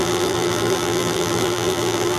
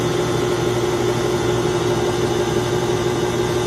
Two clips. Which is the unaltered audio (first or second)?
second